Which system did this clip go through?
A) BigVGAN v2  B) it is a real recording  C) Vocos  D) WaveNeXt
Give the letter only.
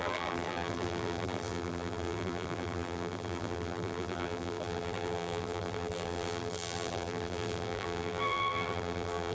A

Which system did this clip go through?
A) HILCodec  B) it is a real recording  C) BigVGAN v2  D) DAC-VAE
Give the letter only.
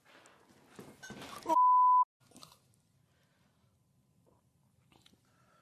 B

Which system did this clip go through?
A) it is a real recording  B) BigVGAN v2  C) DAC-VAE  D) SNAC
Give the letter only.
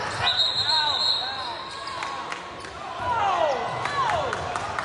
A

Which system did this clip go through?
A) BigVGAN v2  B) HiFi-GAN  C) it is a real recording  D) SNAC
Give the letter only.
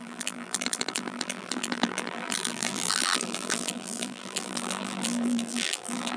A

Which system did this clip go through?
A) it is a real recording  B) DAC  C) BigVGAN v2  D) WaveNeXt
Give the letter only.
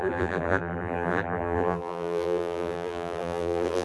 C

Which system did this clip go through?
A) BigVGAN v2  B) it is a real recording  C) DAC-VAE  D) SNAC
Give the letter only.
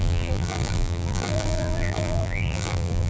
A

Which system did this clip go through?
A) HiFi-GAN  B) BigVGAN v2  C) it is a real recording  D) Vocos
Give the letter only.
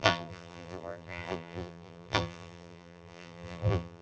B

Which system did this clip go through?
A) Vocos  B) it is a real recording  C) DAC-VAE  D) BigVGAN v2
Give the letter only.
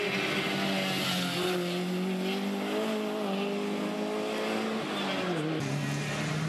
B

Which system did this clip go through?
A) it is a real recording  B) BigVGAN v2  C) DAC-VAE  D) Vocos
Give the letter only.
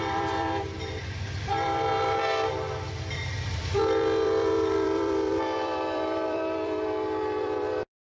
B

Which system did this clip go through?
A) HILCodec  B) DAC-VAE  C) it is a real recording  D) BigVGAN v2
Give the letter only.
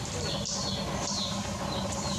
C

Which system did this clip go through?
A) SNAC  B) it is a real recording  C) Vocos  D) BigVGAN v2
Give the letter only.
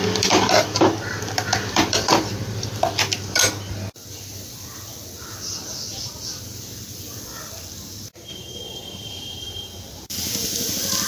D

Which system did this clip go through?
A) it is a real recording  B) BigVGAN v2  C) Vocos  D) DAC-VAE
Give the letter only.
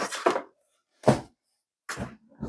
A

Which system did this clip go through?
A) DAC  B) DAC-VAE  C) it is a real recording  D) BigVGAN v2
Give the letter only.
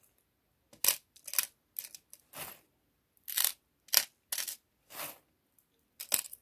C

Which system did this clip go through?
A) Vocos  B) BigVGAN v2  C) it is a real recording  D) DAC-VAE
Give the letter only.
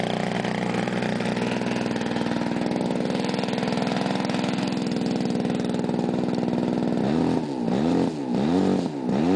C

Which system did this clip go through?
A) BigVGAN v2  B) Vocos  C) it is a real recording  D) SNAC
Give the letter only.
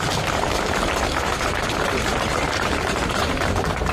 A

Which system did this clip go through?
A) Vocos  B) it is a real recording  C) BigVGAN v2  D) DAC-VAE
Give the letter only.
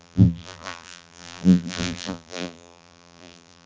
C